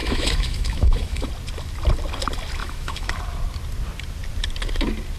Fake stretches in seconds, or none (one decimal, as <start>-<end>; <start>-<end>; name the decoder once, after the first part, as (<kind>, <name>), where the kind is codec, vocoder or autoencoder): 0.0-1.3 (autoencoder, DAC-VAE); 2.6-3.1